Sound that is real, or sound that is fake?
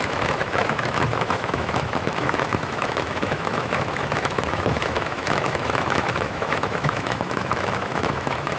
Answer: fake